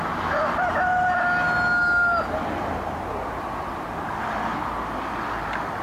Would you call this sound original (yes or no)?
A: yes